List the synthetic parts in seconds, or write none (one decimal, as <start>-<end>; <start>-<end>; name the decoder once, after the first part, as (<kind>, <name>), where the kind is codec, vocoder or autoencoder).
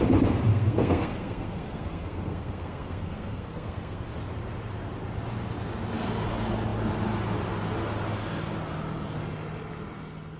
0.5-4.1 (codec, SNAC)